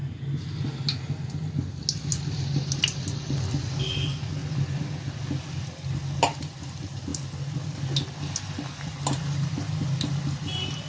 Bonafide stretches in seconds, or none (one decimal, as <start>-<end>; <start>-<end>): 0.0-10.9